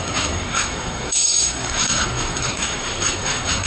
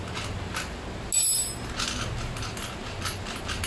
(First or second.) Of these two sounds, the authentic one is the second